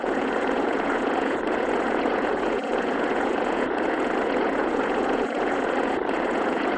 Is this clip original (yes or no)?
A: no